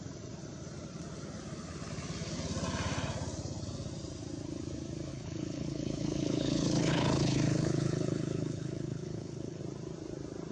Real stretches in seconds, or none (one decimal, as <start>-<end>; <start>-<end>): 0.0-5.1; 9.6-10.5

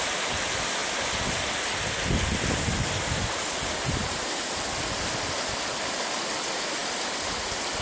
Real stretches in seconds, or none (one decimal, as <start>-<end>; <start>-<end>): 0.0-7.8

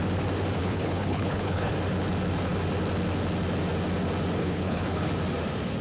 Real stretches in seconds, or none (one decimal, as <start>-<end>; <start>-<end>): 0.0-0.6; 1.7-4.4; 5.1-5.8

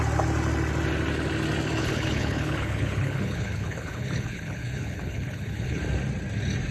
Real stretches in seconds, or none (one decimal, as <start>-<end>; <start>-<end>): 0.0-1.8; 5.8-6.7